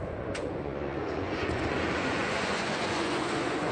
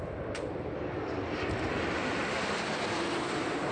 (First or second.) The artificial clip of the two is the first